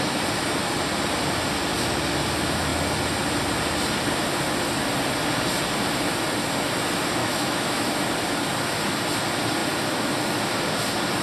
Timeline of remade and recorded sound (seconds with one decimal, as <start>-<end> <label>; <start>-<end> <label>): 0.0-7.2 recorded; 7.2-7.9 remade; 7.9-11.2 recorded